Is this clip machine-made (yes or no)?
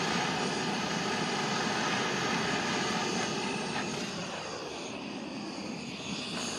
no